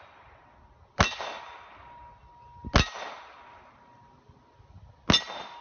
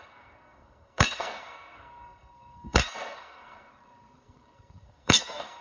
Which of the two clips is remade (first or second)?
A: second